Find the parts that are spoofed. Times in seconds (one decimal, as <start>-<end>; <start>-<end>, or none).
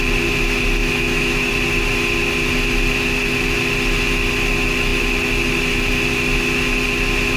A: 0.8-1.5